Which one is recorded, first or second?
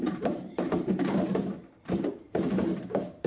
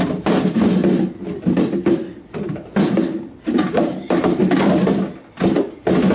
second